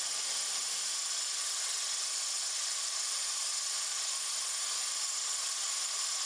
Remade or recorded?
recorded